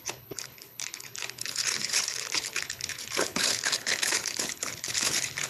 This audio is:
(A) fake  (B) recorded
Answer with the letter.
A